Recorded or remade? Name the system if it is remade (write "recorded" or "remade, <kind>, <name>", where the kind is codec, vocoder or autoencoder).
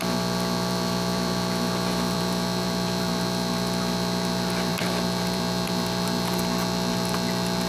remade, vocoder, BigVGAN v2